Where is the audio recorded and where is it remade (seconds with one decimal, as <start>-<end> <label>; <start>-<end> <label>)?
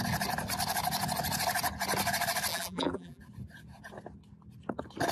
0.0-2.5 recorded; 2.5-3.2 remade; 3.2-5.1 recorded